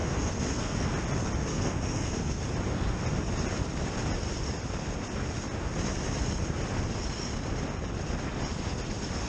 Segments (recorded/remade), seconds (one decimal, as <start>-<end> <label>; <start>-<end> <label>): 0.0-0.9 remade; 0.9-1.5 recorded; 1.5-2.4 remade; 2.4-9.3 recorded